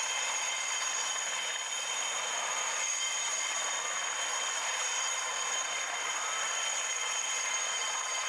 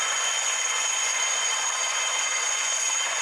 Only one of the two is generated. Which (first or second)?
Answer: second